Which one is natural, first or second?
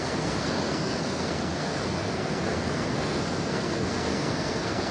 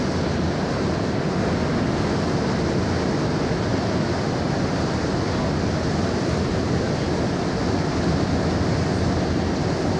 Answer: second